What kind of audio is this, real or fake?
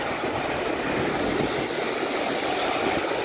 real